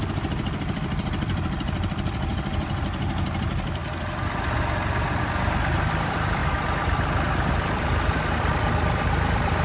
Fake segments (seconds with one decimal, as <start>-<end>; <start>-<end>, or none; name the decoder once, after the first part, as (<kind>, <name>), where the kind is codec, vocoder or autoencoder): 0.0-3.8 (vocoder, BigVGAN v2); 5.2-9.6